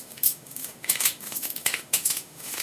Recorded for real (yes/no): no